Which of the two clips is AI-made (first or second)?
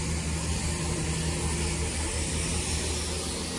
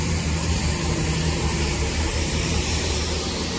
second